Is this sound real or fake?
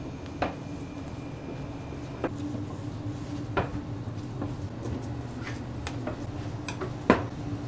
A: real